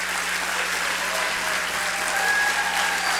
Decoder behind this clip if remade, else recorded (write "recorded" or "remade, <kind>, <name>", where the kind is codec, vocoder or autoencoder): recorded